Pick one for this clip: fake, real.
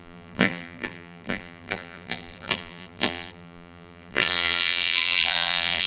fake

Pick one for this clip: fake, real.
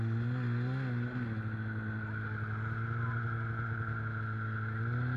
real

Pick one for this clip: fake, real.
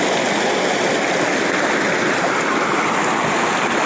real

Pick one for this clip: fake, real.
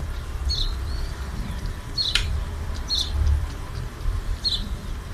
fake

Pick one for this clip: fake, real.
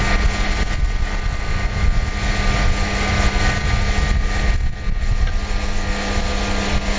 real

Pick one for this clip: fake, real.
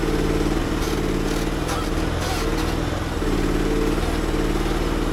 real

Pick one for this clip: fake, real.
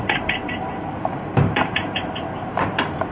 fake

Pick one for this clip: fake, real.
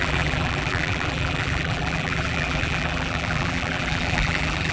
fake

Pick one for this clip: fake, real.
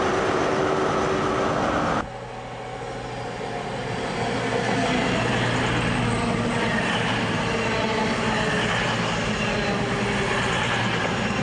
real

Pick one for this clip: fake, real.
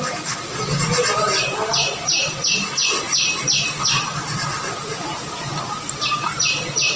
real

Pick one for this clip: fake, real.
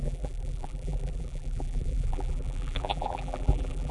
fake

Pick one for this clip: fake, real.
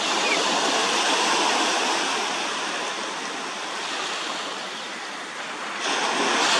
real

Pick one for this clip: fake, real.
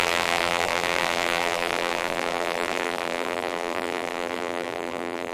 fake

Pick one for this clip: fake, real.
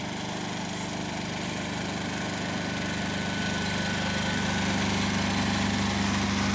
real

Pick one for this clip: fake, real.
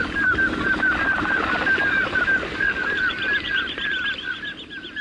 real